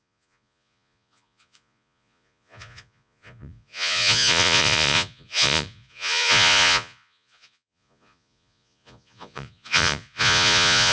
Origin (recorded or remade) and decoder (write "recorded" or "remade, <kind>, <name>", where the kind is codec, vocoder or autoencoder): remade, vocoder, Vocos